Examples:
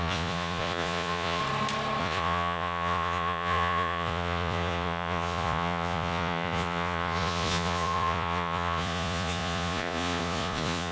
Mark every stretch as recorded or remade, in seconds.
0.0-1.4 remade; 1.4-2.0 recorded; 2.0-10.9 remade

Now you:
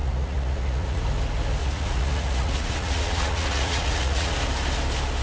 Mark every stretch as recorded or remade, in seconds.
0.0-1.0 remade; 1.0-1.6 recorded; 1.6-4.3 remade; 4.3-5.2 recorded

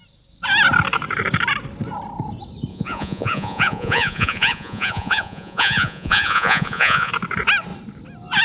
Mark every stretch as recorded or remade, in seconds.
0.0-2.7 recorded; 2.7-7.1 remade; 7.1-8.4 recorded

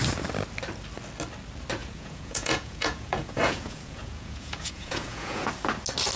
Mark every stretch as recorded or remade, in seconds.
0.0-1.8 recorded; 1.8-5.5 remade; 5.5-6.2 recorded

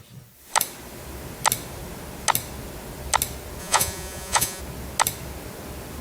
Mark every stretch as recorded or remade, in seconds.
0.0-3.6 recorded; 3.6-4.6 remade; 4.6-6.0 recorded

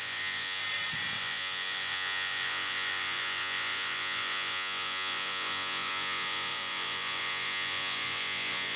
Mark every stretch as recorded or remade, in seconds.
0.0-0.6 remade; 0.6-1.2 recorded; 1.2-8.8 remade